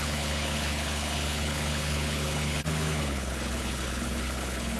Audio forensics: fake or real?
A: fake